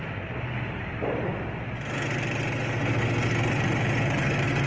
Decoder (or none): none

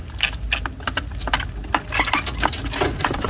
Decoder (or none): none